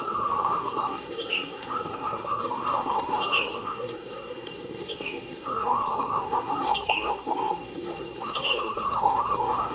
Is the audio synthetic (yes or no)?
yes